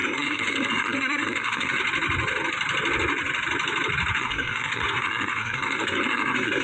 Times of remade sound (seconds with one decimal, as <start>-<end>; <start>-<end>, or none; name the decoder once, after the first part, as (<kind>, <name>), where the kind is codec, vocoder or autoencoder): 0.0-1.8 (codec, SNAC); 4.2-6.6